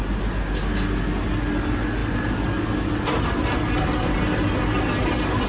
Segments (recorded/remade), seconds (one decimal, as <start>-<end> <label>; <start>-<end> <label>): 0.0-5.5 recorded